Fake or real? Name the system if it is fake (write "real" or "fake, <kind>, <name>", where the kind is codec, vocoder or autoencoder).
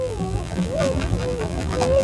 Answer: fake, vocoder, BigVGAN v2